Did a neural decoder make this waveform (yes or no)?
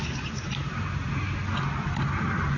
no